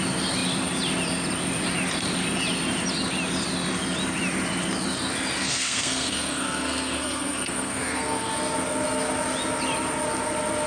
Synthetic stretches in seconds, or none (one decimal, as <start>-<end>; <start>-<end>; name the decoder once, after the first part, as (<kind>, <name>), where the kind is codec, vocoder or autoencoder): 5.4-8.3 (codec, SNAC)